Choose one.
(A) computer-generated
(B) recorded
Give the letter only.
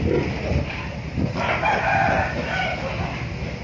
B